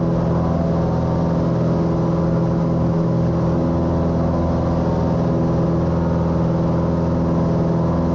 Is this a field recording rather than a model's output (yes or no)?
yes